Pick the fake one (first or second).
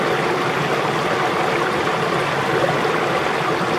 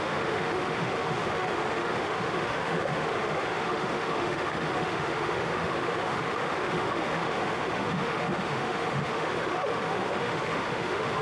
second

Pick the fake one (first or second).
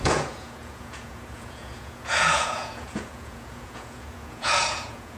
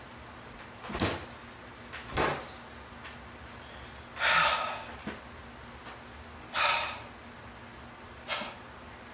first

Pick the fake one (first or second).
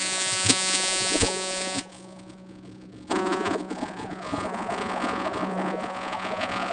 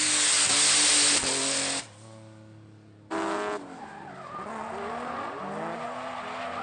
first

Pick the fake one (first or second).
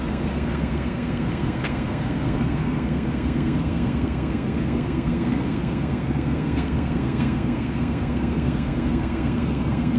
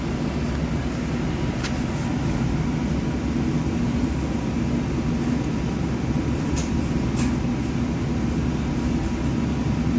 first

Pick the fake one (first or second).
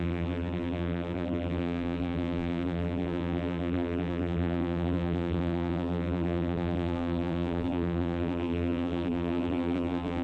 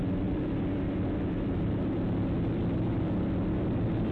first